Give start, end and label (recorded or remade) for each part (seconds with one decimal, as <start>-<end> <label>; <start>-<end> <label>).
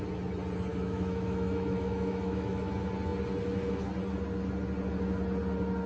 0.0-0.7 recorded; 0.7-2.7 remade; 2.7-5.9 recorded